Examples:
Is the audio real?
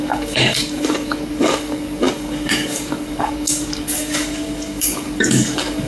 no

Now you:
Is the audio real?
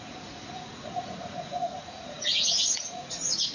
no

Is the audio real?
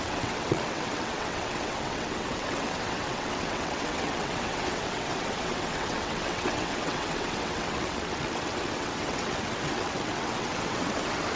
no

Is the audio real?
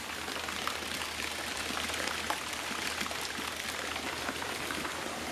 yes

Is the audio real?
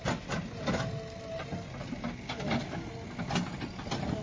yes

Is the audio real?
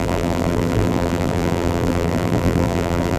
no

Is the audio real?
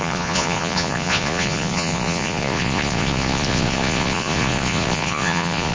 no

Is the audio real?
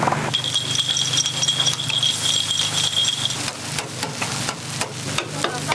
yes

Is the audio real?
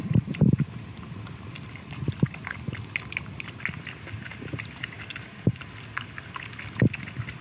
yes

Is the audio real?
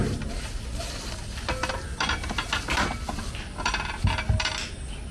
yes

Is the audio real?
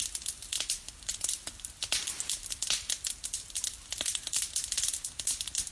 yes